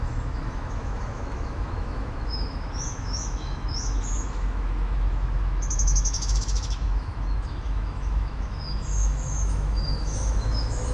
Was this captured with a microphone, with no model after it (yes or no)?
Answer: no